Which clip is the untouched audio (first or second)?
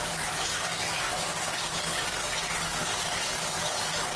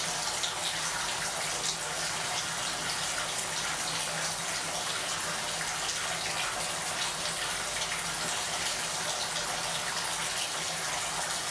second